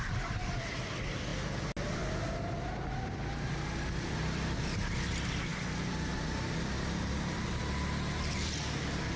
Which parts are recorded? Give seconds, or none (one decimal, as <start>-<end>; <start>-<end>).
0.0-9.2